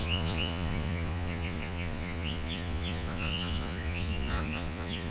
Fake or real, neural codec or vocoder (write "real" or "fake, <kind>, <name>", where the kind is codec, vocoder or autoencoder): fake, vocoder, Vocos